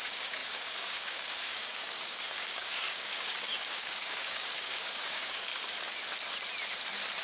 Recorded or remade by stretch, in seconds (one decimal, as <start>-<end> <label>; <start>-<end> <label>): 0.0-5.5 remade; 5.5-7.2 recorded